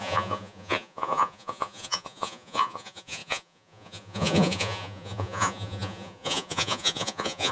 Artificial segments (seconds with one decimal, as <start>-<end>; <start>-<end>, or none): 0.0-7.5